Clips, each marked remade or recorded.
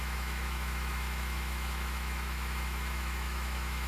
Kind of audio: remade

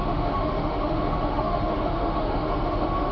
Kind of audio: remade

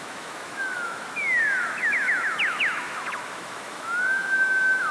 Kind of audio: remade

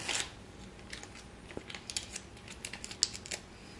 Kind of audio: recorded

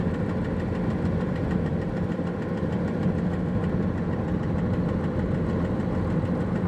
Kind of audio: recorded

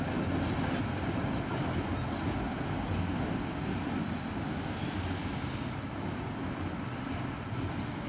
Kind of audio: recorded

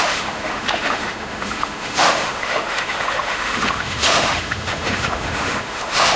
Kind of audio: remade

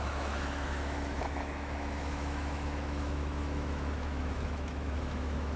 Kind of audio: remade